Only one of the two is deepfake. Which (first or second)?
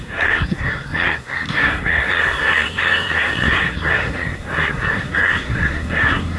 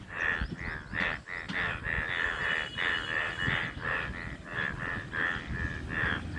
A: first